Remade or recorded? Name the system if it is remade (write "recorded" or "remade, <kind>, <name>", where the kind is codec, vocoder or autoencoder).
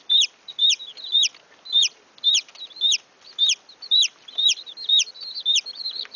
remade, vocoder, BigVGAN v2